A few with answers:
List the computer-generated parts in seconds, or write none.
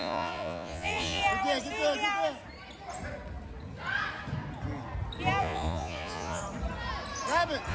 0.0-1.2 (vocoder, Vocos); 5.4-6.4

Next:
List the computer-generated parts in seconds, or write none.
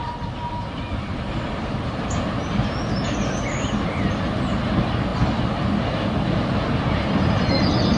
none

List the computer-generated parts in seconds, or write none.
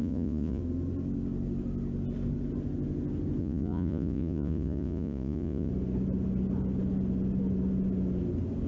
0.0-0.6 (vocoder, Vocos); 3.4-5.7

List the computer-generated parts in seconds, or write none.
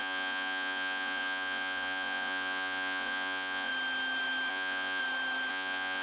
0.0-3.7 (vocoder, Vocos); 4.5-5.0; 5.5-6.0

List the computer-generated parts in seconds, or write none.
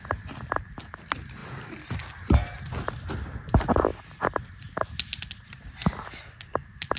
none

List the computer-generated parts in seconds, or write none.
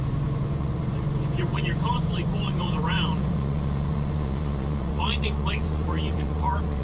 0.0-6.8 (vocoder, Vocos)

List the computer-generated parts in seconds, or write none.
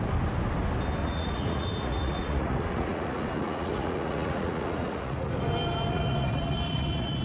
1.0-5.3 (vocoder, Vocos); 5.9-7.2